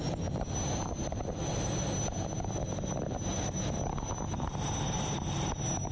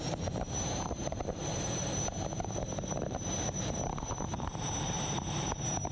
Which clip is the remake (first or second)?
second